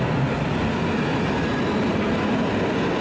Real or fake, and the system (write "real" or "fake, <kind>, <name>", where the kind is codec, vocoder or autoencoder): real